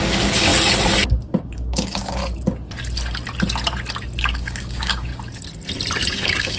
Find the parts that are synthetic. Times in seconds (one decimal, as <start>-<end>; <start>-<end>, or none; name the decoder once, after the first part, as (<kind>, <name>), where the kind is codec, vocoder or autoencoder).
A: 0.0-0.5 (codec, DAC); 1.4-2.2; 4.2-5.1; 6.1-6.6